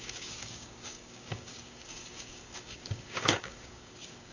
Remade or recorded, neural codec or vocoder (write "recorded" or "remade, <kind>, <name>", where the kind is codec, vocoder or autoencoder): remade, codec, DAC